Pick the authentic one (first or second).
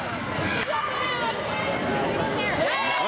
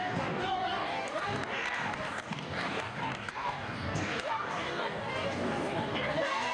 first